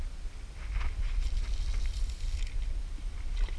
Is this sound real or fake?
real